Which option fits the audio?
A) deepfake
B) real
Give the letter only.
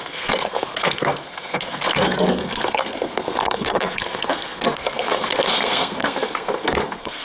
A